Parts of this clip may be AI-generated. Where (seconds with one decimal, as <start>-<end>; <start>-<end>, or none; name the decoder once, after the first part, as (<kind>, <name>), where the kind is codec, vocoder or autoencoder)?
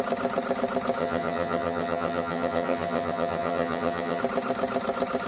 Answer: 1.0-4.2 (vocoder, HiFi-GAN)